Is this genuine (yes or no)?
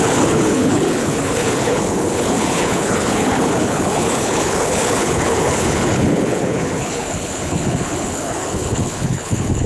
no